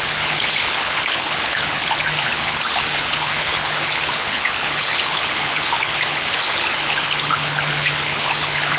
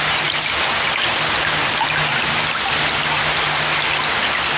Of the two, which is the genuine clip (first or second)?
second